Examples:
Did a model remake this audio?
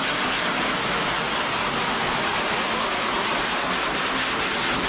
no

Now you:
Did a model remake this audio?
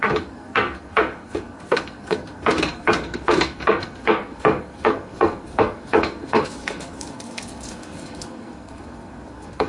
yes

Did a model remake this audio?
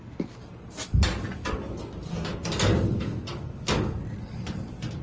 no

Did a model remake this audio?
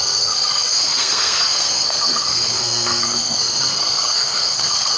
yes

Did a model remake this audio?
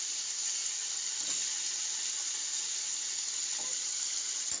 no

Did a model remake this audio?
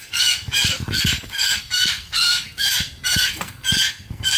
yes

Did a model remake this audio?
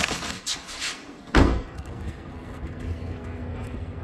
yes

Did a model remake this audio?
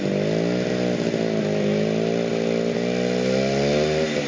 no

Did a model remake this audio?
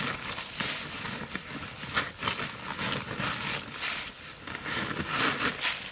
no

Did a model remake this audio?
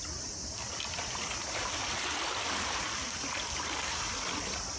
no